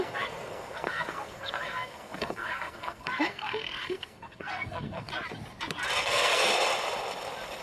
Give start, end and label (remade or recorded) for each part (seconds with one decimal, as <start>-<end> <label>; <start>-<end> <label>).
0.0-5.1 remade; 5.1-6.0 recorded; 6.0-6.5 remade; 6.5-7.6 recorded